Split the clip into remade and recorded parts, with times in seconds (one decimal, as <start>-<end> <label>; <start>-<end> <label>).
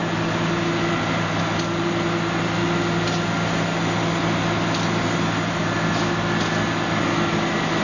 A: 0.0-7.8 recorded